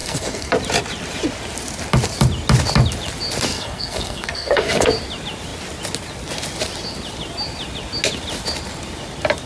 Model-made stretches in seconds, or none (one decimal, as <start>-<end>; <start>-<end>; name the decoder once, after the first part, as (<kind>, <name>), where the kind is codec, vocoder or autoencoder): 0.0-0.5 (codec, SNAC); 3.5-4.9